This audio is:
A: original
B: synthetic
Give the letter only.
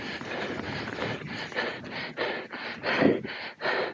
A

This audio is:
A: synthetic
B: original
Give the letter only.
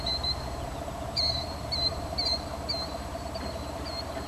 A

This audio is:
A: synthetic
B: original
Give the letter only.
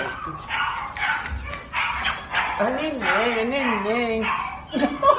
B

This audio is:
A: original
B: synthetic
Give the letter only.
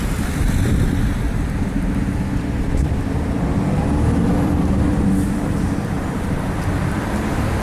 B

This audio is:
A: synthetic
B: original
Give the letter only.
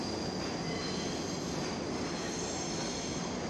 B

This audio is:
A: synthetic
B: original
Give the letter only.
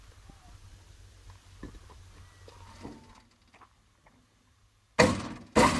B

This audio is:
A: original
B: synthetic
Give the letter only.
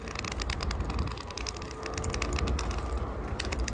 A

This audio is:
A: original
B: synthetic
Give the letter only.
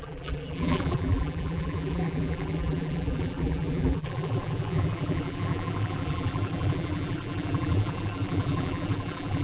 B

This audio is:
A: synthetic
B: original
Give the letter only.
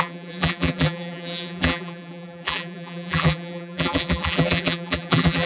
A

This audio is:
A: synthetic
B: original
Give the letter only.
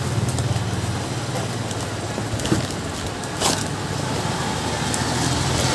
B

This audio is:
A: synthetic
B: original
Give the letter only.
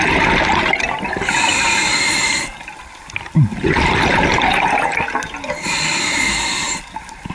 B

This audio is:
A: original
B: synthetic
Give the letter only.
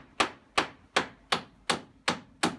A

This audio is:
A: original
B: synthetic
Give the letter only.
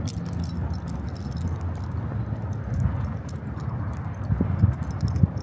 A